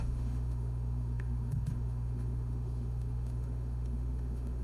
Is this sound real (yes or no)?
no